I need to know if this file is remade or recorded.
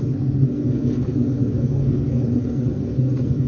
remade